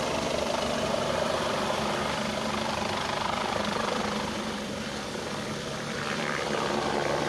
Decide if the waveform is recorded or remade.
remade